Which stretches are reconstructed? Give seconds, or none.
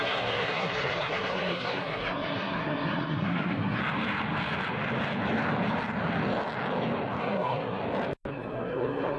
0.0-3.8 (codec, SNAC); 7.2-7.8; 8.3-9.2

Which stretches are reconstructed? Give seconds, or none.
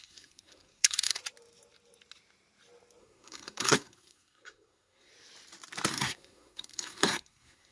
0.0-1.2 (codec, SNAC); 3.0-5.1; 5.9-7.7